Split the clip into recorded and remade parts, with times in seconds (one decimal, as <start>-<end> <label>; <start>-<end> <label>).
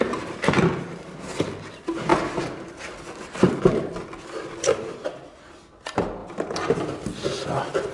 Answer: 0.0-2.1 recorded; 2.1-3.5 remade; 3.5-6.2 recorded; 6.2-6.8 remade; 6.8-7.9 recorded